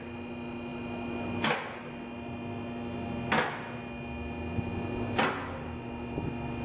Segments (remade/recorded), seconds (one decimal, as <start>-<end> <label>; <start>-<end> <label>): 0.0-6.6 recorded